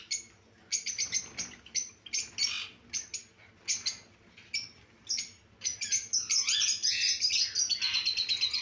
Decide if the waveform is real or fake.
real